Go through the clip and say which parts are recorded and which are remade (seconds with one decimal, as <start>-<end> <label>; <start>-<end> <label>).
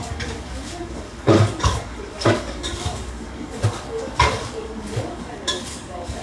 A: 0.0-6.2 remade